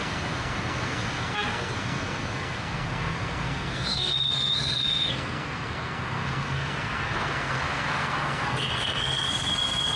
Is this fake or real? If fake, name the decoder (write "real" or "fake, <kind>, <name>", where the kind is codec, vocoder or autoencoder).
fake, codec, SNAC